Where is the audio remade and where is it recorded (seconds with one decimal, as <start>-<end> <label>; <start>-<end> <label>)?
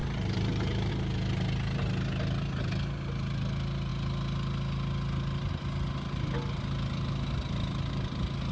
0.0-0.9 remade; 0.9-8.5 recorded